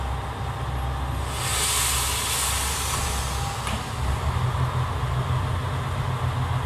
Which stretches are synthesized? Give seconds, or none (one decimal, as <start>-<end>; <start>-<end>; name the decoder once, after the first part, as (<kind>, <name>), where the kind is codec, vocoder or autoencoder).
none